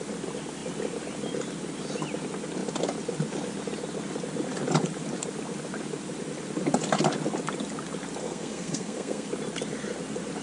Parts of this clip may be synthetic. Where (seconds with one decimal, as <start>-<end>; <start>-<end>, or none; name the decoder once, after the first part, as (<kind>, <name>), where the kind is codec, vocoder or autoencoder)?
8.2-9.3 (codec, SNAC)